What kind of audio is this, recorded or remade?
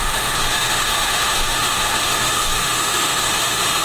remade